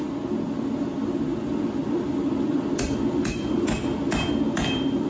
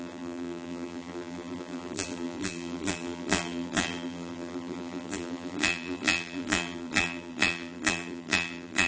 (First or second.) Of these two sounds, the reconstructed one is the second